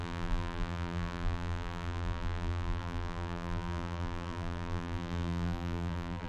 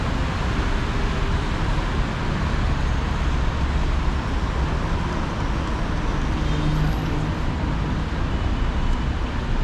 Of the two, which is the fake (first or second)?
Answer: first